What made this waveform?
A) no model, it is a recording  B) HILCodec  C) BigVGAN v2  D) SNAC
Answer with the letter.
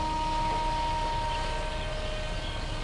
A